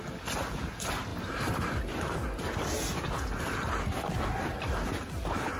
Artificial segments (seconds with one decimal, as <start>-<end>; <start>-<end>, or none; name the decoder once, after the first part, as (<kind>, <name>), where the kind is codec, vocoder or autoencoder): none